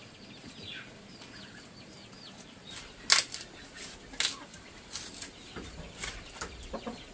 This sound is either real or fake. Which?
real